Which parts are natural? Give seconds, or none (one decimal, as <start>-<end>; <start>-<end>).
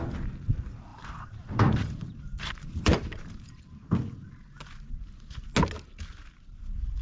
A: 0.0-0.9; 3.6-7.0